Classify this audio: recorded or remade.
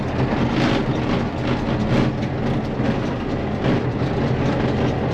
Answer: recorded